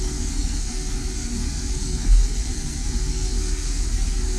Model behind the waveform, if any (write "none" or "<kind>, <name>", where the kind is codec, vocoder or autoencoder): codec, SNAC